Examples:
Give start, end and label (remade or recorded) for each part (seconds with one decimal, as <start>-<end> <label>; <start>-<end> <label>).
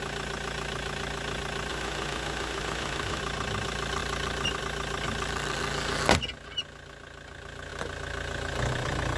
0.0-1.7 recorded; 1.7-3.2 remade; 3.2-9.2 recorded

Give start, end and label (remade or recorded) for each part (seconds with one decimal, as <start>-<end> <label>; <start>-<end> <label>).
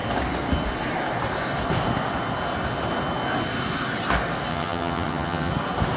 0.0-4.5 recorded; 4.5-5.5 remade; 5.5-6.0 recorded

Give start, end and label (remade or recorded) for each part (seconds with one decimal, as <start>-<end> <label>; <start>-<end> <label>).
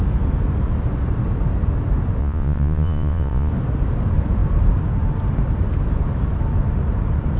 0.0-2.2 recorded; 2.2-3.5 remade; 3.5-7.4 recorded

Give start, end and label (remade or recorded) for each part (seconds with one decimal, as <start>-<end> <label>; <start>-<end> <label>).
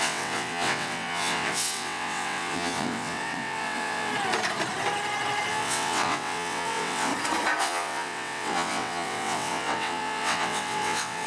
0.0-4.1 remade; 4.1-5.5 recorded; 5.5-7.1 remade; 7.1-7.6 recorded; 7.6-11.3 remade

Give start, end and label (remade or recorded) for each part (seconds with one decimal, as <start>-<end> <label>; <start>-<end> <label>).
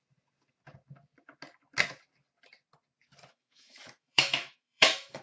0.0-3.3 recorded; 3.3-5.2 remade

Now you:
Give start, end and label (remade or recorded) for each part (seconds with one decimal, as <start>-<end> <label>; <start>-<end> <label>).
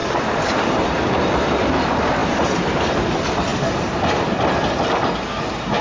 0.0-1.1 remade; 1.1-2.2 recorded; 2.2-2.8 remade; 2.8-5.8 recorded